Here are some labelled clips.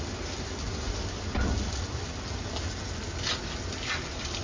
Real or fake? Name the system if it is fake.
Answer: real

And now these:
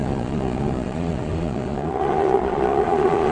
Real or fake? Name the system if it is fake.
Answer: fake, vocoder, Vocos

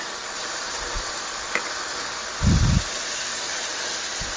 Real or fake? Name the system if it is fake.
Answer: real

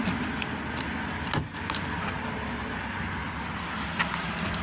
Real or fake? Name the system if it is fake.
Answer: real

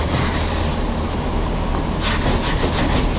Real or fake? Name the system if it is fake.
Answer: real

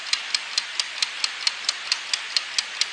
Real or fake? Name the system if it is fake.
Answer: real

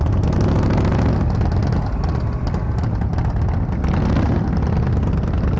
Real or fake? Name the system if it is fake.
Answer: real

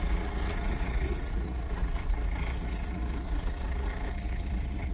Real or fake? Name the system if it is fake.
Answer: fake, vocoder, Vocos